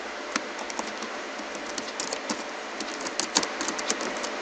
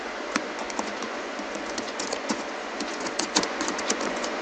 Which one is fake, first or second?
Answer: second